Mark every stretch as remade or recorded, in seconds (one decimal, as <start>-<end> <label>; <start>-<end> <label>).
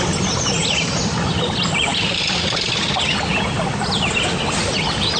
0.0-5.2 recorded